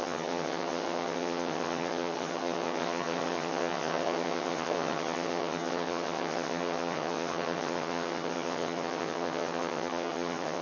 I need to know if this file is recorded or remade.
remade